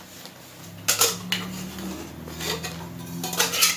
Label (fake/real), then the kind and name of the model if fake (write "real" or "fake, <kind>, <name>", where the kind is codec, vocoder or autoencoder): real